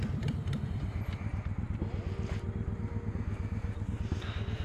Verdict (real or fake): real